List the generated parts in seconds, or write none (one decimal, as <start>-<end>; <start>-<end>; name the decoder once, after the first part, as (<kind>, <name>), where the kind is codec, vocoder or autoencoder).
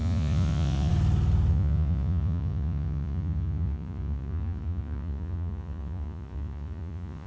0.0-0.9 (vocoder, Vocos); 1.5-7.3